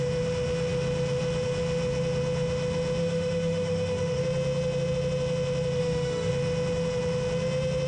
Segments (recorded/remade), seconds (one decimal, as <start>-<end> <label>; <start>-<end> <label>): 0.0-3.0 recorded; 3.0-4.2 remade; 4.2-5.8 recorded; 5.8-6.3 remade; 6.3-7.9 recorded